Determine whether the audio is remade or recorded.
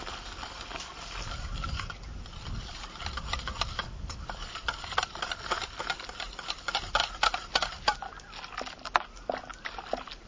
recorded